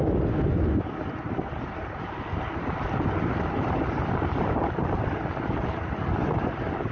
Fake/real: real